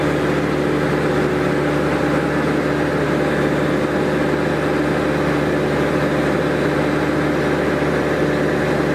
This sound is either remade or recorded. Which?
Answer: recorded